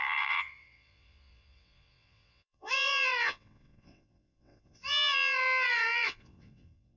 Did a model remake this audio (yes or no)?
yes